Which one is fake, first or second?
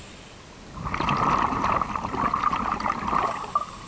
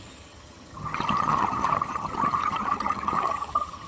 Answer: second